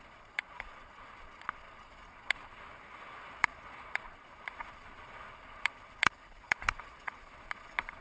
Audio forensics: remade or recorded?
remade